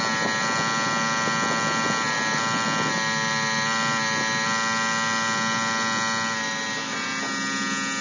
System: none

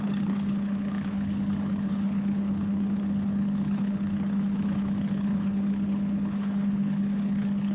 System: codec, HILCodec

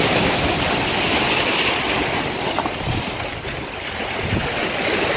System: none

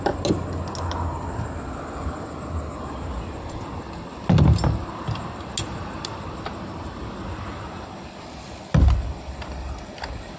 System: none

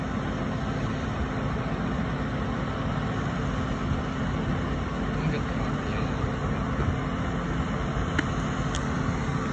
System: none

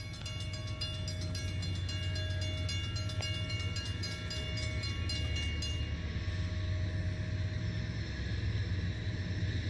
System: none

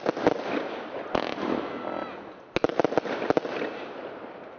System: none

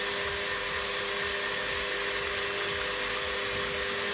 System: none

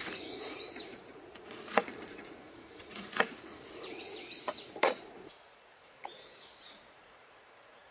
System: vocoder, Vocos